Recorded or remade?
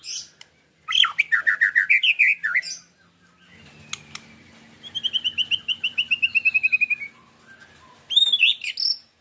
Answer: recorded